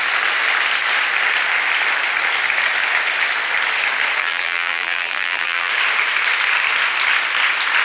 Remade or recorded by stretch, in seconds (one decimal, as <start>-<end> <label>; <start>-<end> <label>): 0.0-4.2 recorded; 4.2-5.7 remade; 5.7-7.8 recorded